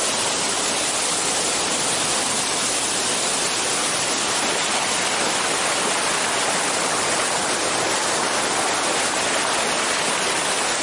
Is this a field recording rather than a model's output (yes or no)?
yes